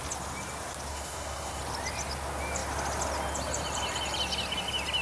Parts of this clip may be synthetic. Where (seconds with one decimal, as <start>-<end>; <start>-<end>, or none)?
0.9-1.6